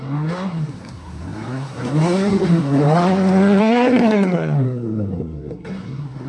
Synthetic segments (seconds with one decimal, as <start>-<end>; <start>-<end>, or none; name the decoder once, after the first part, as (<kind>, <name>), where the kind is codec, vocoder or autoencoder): 0.0-3.0 (codec, SNAC); 3.6-6.3